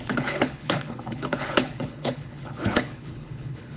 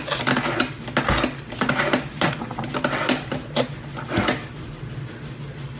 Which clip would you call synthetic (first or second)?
first